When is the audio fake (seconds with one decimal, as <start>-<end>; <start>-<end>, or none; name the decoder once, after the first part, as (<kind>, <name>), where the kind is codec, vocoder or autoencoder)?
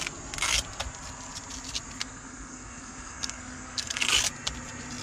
2.0-4.1 (codec, SNAC)